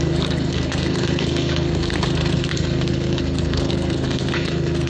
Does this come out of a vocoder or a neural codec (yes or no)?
yes